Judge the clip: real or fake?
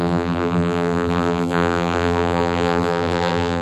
fake